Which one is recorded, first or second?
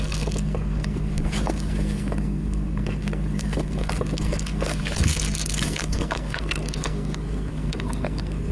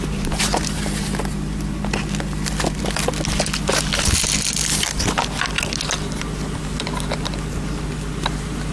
second